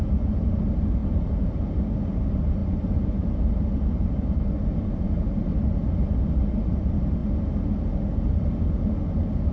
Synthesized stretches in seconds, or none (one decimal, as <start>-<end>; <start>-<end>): 0.0-7.2